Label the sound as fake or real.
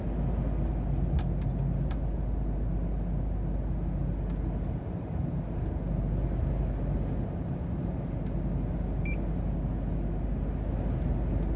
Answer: real